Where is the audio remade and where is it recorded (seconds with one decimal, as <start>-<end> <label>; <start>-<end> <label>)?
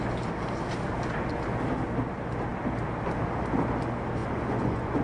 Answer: 0.0-4.2 recorded; 4.2-5.0 remade